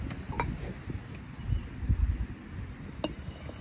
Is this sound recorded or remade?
recorded